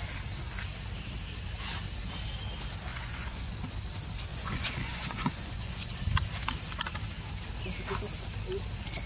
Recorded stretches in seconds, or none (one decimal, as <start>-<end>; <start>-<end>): 0.0-2.9; 3.5-4.3; 5.9-9.1